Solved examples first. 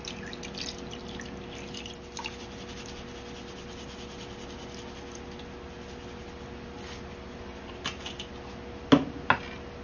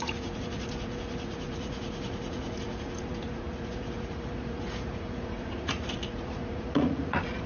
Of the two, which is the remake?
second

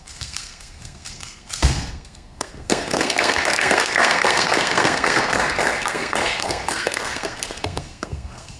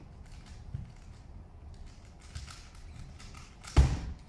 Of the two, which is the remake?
first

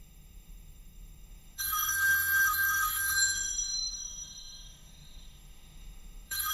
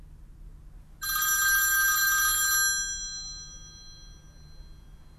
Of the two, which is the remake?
first